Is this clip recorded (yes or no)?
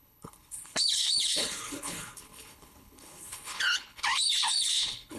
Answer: no